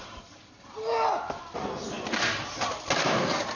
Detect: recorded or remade recorded